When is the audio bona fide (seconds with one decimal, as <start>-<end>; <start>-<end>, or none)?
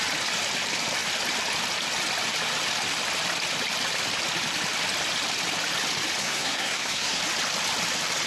0.0-6.2; 7.2-8.3